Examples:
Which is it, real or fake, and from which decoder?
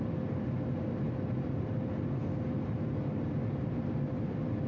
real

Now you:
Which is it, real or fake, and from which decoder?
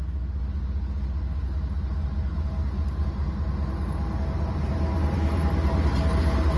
real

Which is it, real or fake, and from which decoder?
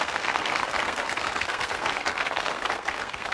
fake, codec, SNAC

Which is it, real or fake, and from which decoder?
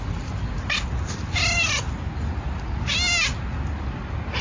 real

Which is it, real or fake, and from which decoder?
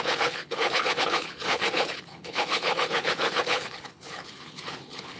fake, codec, HILCodec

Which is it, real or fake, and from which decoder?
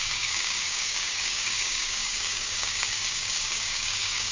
fake, codec, DAC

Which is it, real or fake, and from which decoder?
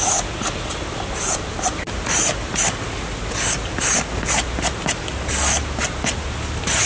real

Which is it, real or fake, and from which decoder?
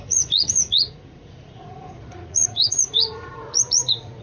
fake, vocoder, Vocos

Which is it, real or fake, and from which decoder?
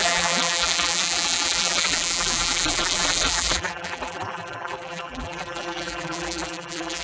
fake, vocoder, BigVGAN v2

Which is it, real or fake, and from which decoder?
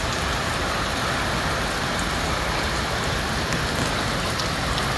real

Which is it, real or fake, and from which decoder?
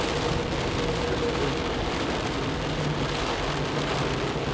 real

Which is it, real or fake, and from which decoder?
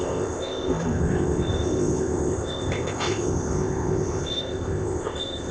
fake, codec, ZipCodec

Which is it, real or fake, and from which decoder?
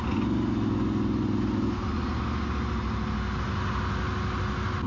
real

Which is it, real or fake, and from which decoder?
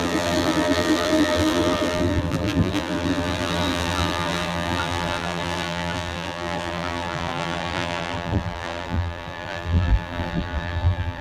fake, vocoder, BigVGAN v2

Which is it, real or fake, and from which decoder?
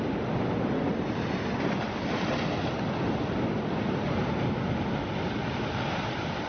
real